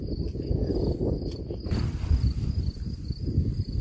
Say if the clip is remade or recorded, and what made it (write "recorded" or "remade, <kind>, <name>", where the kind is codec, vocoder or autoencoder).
recorded